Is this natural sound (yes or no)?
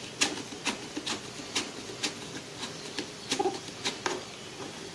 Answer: yes